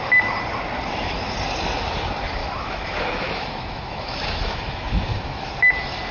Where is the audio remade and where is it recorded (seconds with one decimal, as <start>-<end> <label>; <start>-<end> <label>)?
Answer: 0.0-2.4 recorded; 2.4-5.5 remade; 5.5-6.1 recorded